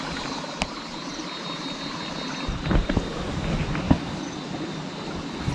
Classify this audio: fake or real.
real